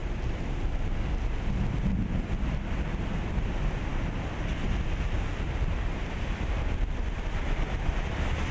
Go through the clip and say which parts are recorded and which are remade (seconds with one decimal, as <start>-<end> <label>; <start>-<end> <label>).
0.0-8.5 recorded